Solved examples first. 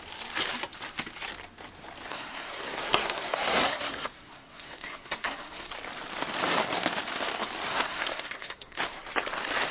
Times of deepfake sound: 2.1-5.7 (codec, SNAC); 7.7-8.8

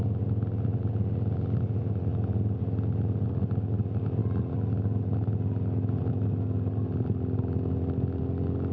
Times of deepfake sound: none

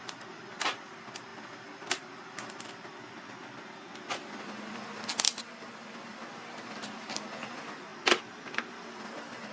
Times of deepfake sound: none

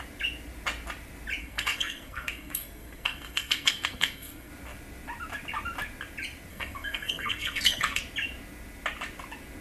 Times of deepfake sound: 1.4-4.5 (codec, SNAC); 6.5-8.0

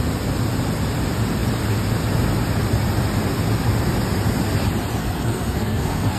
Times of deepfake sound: 5.0-6.2 (codec, SNAC)

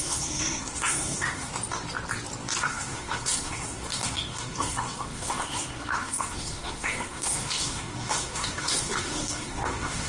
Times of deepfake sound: 0.0-1.5 (codec, SNAC); 2.6-10.1

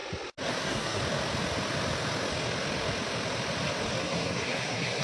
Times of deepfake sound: 0.5-1.0 (codec, SNAC); 4.0-5.0